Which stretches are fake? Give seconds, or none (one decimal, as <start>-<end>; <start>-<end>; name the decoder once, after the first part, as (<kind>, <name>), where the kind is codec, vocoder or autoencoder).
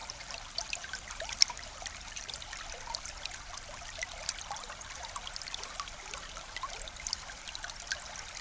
0.0-2.3 (vocoder, BigVGAN v2)